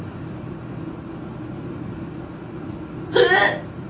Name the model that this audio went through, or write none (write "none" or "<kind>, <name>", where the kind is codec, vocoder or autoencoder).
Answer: none